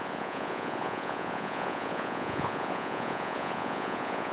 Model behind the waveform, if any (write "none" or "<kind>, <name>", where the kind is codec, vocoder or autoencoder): vocoder, Vocos